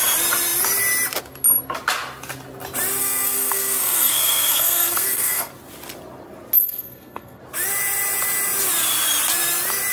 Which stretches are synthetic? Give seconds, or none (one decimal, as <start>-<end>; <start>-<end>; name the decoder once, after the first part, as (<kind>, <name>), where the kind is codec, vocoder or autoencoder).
3.0-5.5 (codec, SNAC); 6.6-7.4